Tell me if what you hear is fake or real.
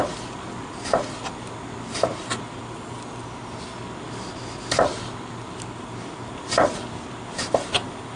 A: real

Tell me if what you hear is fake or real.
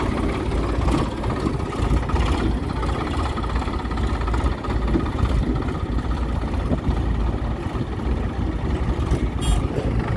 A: real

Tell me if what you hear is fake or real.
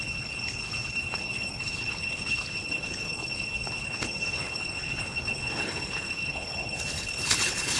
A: fake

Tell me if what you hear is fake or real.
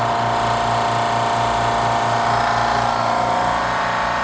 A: real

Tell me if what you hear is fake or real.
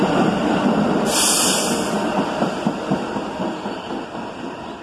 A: real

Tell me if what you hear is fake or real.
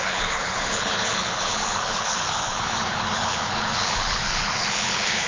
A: fake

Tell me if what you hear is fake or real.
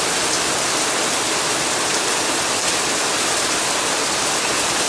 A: real